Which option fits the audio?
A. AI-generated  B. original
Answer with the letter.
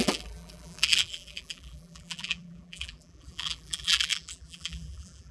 A